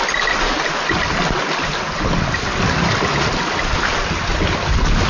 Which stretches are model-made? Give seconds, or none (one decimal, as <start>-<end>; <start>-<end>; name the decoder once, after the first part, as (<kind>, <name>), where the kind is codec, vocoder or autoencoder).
none